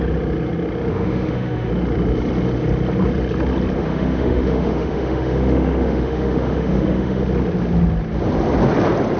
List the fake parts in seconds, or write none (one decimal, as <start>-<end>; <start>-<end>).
0.9-1.7; 3.8-7.2